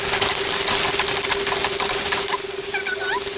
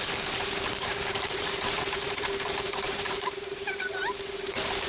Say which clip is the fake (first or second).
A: second